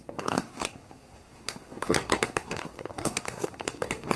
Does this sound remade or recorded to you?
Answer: remade